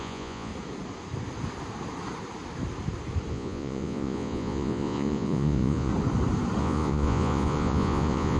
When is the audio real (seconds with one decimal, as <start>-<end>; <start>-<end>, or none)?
0.5-3.3; 5.9-6.6